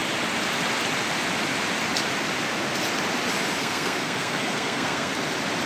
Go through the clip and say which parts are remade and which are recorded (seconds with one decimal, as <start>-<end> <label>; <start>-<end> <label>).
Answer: 0.0-3.6 recorded; 3.6-5.1 remade; 5.1-5.7 recorded